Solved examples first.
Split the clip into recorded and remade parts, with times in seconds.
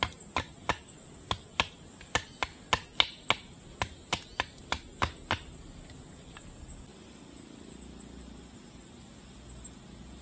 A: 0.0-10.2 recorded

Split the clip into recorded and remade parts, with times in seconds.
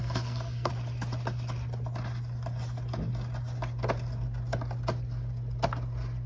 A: 0.0-0.7 remade; 0.7-6.3 recorded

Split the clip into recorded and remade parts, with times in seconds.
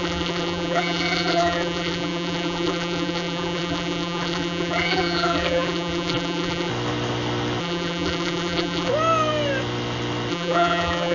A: 0.0-6.7 remade; 6.7-7.6 recorded; 7.6-8.9 remade; 8.9-10.3 recorded; 10.3-11.1 remade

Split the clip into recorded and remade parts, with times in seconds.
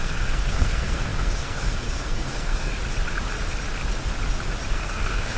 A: 0.0-2.7 remade; 2.7-4.7 recorded; 4.7-5.4 remade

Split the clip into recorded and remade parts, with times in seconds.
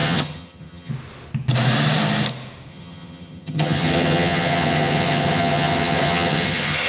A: 0.0-0.9 remade; 0.9-2.7 recorded; 2.7-6.9 remade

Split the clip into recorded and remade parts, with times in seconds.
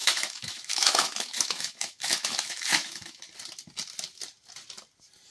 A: 0.0-3.2 remade; 3.2-5.3 recorded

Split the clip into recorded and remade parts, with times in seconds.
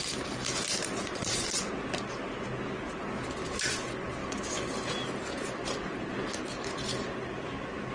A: 0.0-1.0 recorded; 1.0-1.7 remade; 1.7-7.9 recorded